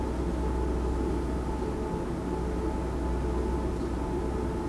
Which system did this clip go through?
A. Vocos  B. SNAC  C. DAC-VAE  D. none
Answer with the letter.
D